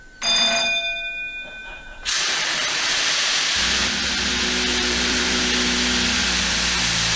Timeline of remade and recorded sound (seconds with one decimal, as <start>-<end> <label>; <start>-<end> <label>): 0.0-1.6 recorded; 1.6-3.5 remade; 3.5-4.7 recorded; 4.7-5.4 remade; 5.4-7.2 recorded